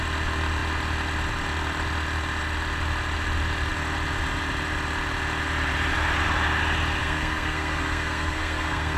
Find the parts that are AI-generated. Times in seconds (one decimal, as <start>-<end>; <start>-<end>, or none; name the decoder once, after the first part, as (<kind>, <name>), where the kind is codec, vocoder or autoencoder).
7.0-9.0 (codec, SNAC)

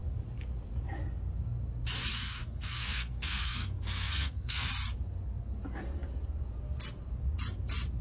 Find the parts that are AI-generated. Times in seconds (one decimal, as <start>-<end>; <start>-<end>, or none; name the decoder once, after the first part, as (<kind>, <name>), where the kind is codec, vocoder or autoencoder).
2.1-4.7 (codec, SNAC)

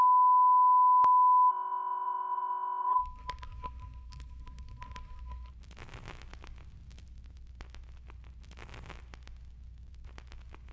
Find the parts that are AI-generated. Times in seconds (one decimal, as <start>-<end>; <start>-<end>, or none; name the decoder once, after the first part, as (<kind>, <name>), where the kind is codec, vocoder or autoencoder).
1.5-5.5 (codec, SNAC)

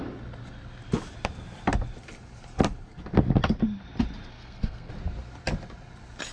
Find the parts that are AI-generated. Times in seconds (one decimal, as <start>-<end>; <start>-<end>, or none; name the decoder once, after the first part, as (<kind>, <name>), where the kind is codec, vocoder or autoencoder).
4.3-4.9 (codec, SNAC)

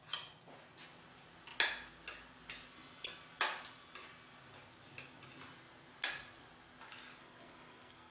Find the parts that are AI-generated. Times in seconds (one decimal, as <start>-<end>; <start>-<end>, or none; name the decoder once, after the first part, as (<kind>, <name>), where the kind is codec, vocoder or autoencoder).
7.2-8.1 (codec, SNAC)

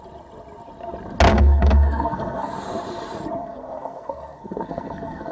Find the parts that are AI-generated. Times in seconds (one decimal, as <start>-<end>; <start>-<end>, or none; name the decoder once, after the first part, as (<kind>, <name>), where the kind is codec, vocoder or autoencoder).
1.3-2.5 (codec, SNAC); 3.4-5.3